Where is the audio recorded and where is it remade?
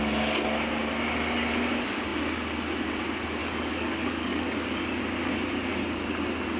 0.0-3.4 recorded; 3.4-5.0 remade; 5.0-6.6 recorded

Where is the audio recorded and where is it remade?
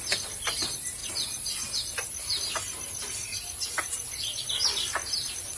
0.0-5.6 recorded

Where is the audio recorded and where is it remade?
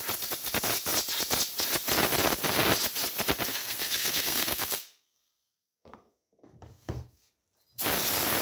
0.0-3.5 recorded; 3.5-7.3 remade; 7.3-8.4 recorded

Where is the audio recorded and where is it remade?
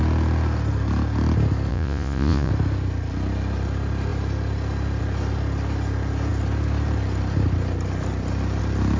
0.0-1.7 recorded; 1.7-2.5 remade; 2.5-9.0 recorded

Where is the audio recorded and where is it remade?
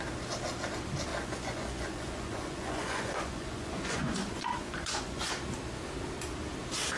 0.0-1.1 recorded; 1.1-5.3 remade; 5.3-7.0 recorded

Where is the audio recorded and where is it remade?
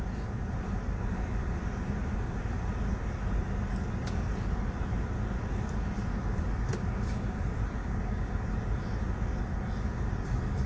0.0-7.8 recorded; 7.8-8.3 remade; 8.3-10.7 recorded